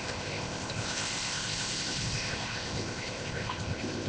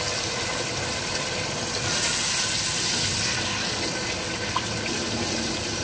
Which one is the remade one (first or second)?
first